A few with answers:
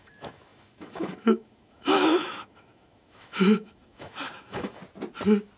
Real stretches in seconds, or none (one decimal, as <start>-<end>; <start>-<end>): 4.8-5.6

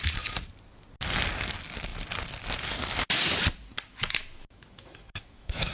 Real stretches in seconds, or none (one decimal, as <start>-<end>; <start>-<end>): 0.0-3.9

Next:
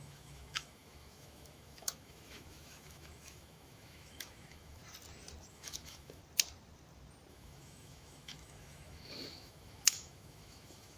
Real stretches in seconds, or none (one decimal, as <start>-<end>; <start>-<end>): 4.8-5.5; 6.2-7.3